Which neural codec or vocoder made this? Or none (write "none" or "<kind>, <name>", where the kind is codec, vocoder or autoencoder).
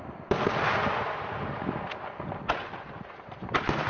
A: none